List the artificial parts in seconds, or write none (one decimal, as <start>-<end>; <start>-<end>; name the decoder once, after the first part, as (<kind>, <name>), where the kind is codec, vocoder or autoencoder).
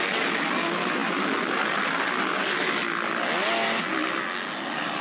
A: none